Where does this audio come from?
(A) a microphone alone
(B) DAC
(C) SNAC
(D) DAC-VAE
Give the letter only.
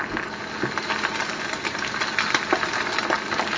A